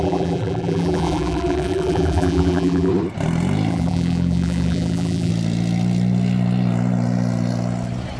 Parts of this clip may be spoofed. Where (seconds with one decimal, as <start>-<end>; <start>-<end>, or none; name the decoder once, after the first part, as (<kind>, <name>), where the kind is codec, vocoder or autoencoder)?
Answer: 0.0-2.9 (vocoder, BigVGAN v2); 3.7-5.3